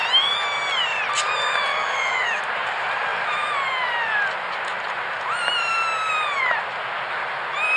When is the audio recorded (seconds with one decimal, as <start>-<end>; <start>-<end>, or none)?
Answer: 0.0-1.7; 2.4-7.8